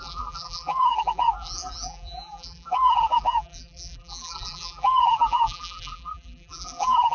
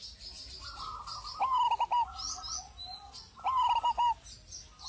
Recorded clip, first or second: second